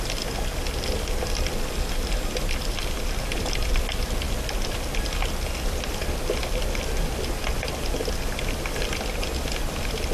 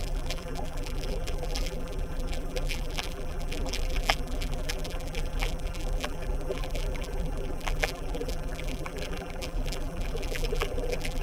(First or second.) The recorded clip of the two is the first